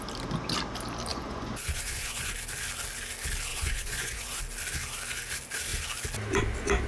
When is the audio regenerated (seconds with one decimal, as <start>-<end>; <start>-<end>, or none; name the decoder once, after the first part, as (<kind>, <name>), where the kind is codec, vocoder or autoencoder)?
1.1-2.3 (vocoder, Vocos); 3.5-4.4